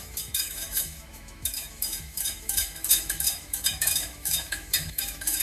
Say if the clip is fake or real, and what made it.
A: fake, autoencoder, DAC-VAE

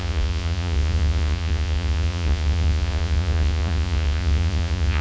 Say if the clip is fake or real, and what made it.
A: fake, vocoder, Vocos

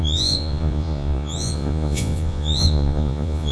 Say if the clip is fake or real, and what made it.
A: fake, vocoder, Vocos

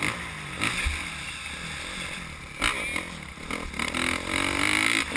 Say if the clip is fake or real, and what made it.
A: real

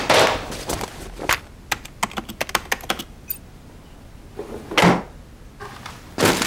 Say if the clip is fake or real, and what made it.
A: real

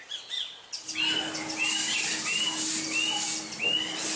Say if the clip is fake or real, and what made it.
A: real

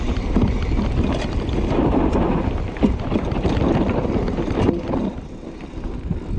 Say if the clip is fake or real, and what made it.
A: real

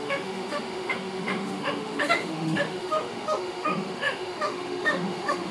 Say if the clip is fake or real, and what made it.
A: fake, autoencoder, DAC-VAE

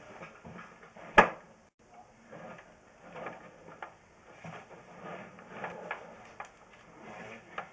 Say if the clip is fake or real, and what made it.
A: real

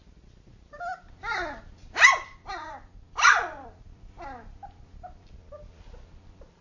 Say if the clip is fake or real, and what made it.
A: real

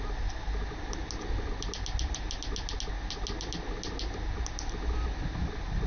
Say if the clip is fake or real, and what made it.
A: real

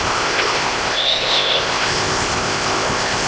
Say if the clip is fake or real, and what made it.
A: fake, codec, ZipCodec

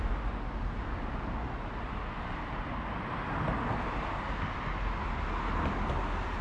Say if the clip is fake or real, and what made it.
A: real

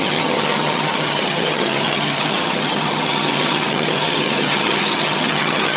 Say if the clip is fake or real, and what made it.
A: fake, vocoder, HiFi-GAN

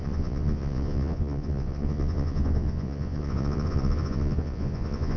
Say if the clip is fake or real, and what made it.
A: fake, vocoder, Vocos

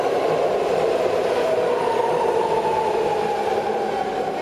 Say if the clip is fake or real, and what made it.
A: real